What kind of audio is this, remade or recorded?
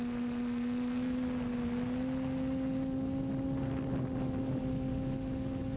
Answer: recorded